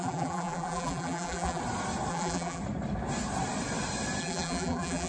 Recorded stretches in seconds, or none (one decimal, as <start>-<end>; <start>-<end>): 1.6-2.1; 2.6-4.2